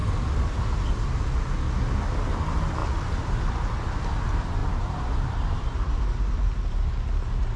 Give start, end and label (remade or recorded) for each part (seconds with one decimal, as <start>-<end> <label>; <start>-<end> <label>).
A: 0.0-7.6 recorded